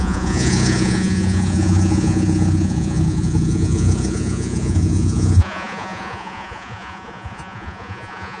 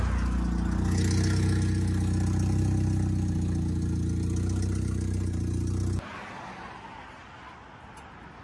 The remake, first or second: first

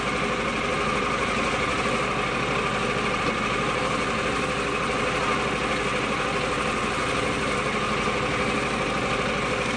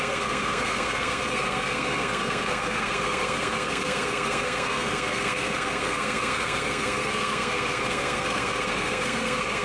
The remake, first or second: second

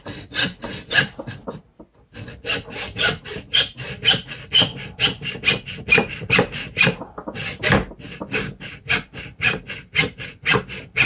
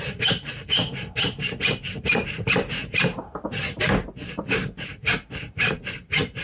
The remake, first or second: second